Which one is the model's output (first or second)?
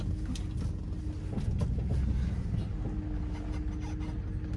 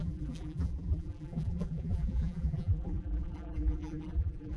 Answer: second